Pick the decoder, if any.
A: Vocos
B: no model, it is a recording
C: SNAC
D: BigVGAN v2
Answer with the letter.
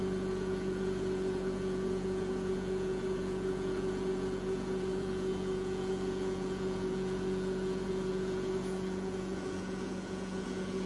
A